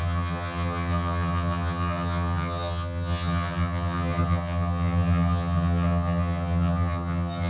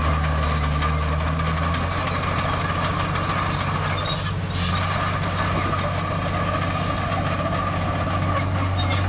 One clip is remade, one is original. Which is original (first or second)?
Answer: second